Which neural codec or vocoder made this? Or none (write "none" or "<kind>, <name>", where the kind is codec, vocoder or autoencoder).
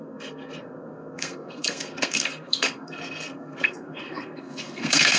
codec, SNAC